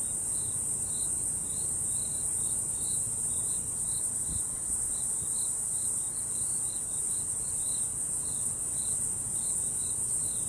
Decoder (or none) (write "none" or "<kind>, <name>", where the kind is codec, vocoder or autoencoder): none